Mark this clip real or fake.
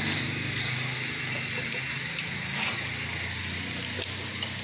real